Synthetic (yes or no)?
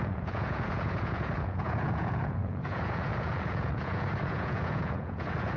yes